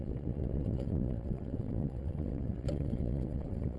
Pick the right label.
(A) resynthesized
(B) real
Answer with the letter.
A